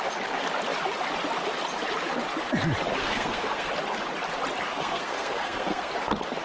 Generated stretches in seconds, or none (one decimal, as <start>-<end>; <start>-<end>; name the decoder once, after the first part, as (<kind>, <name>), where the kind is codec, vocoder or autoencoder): 3.0-3.7 (codec, SNAC); 4.7-5.9